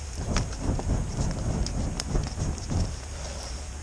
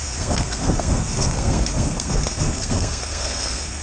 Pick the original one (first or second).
first